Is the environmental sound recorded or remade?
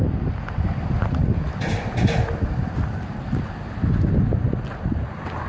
recorded